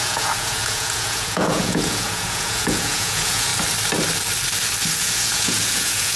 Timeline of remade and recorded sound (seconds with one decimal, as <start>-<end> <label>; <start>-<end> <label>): 0.0-3.5 remade; 3.5-5.0 recorded; 5.0-6.2 remade